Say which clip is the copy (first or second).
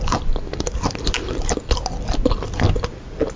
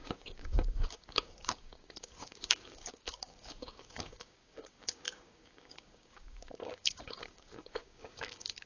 second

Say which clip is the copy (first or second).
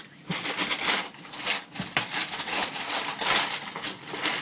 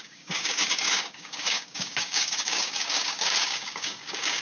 second